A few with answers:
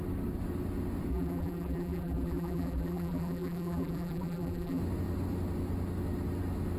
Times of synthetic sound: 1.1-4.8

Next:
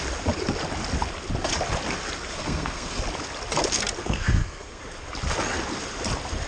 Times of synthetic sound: 2.3-3.0; 4.0-4.8

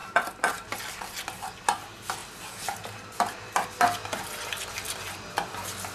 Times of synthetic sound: none

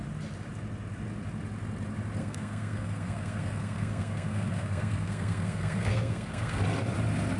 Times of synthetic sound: 2.2-6.6

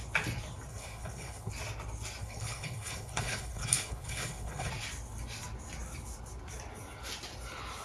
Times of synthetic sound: 0.7-1.5; 2.2-4.7

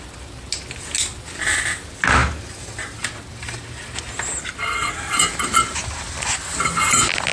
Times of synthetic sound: none

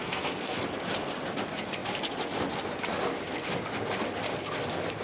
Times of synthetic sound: 0.0-0.6

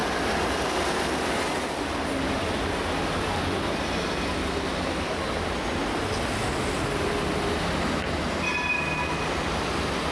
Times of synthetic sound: none